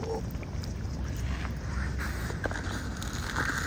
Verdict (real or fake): real